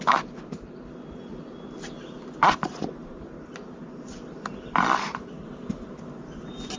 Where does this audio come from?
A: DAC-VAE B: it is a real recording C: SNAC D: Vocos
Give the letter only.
B